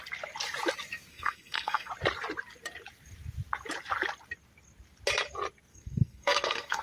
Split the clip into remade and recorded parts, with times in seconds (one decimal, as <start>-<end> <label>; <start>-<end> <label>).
0.0-1.1 recorded; 1.1-1.9 remade; 1.9-5.7 recorded; 5.7-6.8 remade

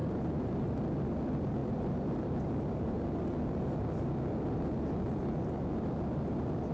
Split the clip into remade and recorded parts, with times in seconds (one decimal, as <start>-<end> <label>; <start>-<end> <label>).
0.0-6.7 recorded

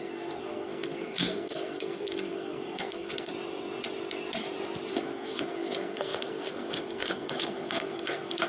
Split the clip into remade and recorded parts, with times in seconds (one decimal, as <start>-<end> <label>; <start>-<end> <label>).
0.0-3.3 remade; 3.3-4.9 recorded; 4.9-8.5 remade

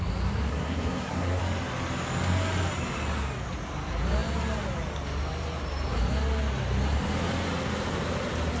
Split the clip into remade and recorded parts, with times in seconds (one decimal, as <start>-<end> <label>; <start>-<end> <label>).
0.0-0.5 recorded; 0.5-1.4 remade; 1.4-8.6 recorded

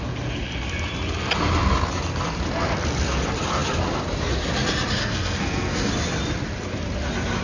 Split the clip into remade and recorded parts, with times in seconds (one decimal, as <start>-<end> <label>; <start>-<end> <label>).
0.0-5.0 recorded; 5.0-5.9 remade; 5.9-7.4 recorded